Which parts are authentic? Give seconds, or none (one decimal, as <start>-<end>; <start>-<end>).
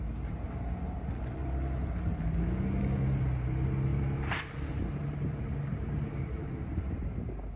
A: 0.0-3.9; 6.5-7.6